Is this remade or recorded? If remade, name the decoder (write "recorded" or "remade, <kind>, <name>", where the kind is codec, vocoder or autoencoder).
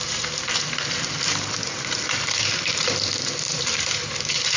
remade, vocoder, BigVGAN v2